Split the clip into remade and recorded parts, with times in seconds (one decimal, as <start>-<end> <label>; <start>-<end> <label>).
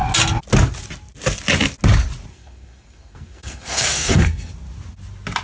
0.0-2.3 recorded; 2.3-4.5 remade; 4.5-5.4 recorded